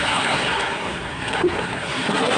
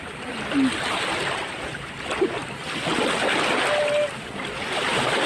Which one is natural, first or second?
second